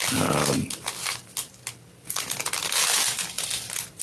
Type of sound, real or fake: real